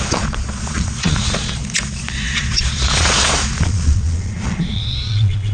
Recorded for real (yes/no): no